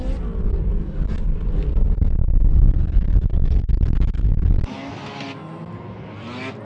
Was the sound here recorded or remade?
recorded